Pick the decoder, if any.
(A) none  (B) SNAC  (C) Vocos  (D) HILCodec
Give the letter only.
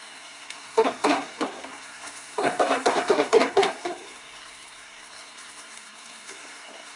B